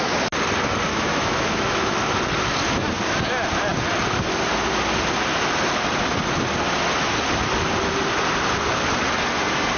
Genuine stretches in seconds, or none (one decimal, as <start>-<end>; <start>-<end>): 0.0-0.9; 1.9-9.8